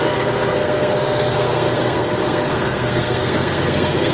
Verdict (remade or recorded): remade